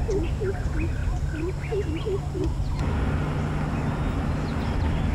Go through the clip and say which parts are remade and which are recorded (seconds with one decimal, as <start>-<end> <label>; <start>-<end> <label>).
0.0-4.5 recorded; 4.5-5.1 remade